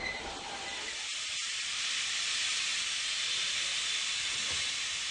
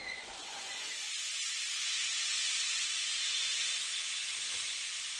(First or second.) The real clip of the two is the first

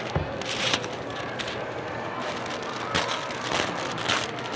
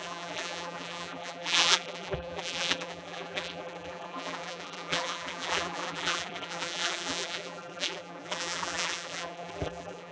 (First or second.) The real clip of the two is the first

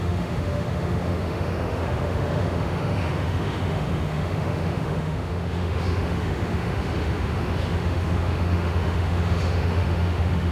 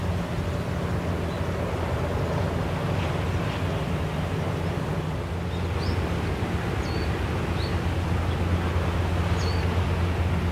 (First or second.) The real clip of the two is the second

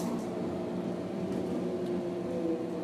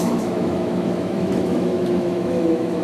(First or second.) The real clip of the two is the first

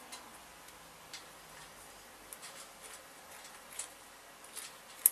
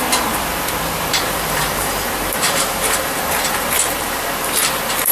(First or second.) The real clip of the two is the first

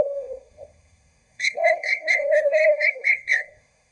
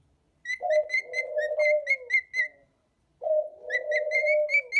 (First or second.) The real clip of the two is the second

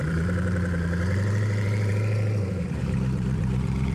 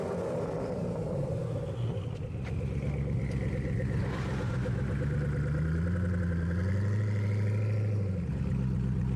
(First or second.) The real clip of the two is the second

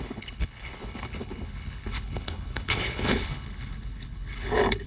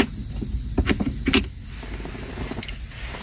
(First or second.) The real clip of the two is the second